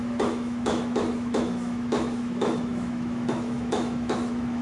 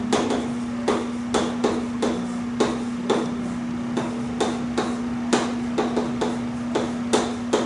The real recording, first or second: second